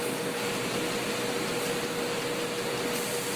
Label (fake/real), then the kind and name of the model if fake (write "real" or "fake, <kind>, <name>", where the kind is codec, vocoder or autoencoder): real